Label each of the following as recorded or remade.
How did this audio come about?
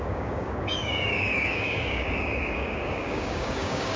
remade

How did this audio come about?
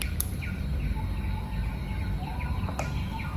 recorded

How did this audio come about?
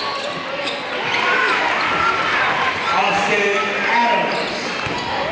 recorded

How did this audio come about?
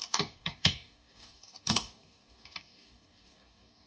remade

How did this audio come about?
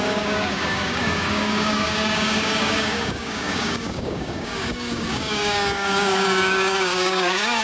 remade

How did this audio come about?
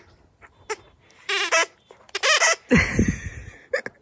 recorded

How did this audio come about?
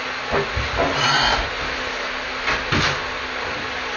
recorded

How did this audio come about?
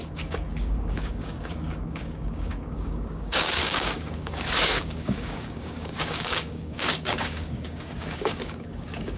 remade